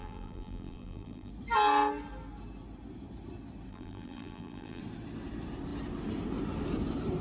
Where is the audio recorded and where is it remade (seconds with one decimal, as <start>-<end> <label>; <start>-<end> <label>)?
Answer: 0.0-1.3 remade; 1.3-3.7 recorded; 3.7-4.8 remade; 4.8-7.2 recorded